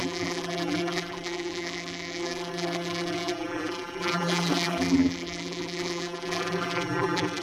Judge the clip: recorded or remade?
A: remade